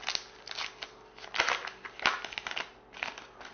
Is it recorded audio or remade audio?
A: recorded